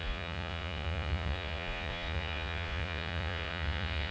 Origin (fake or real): fake